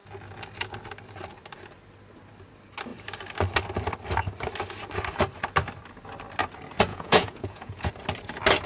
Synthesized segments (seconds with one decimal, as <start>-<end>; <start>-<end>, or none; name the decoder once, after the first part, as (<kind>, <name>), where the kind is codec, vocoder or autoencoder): 6.9-7.9 (vocoder, Vocos)